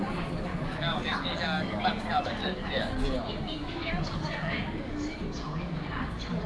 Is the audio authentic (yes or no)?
no